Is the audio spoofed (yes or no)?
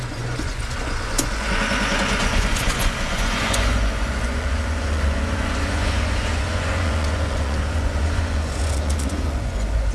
yes